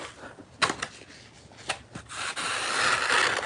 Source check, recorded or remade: recorded